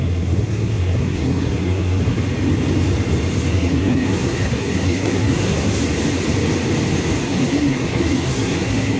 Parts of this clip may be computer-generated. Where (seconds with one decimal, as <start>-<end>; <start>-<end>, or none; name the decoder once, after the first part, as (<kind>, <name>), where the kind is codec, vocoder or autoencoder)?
0.0-2.2 (codec, SNAC); 3.5-5.8; 7.2-9.0